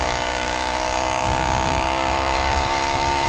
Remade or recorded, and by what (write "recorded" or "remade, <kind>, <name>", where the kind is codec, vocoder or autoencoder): remade, codec, DAC